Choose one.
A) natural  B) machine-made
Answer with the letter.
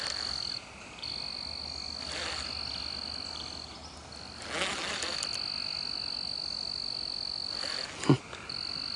A